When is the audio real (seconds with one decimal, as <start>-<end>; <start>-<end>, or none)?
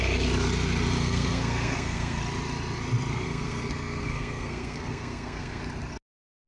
0.0-1.0; 2.2-3.1; 5.6-6.5